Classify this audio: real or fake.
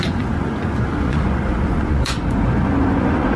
fake